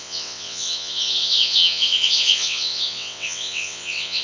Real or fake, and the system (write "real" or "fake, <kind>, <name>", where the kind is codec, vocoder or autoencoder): fake, vocoder, WaveNeXt